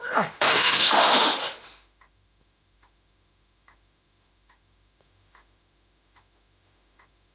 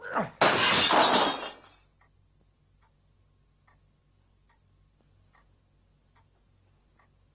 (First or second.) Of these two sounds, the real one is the second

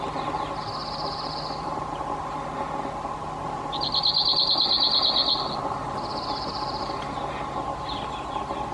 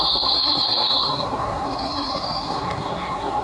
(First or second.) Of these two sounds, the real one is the first